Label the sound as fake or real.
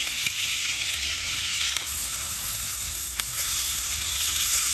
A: fake